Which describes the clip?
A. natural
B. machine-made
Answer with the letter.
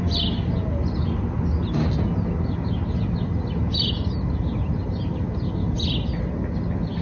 A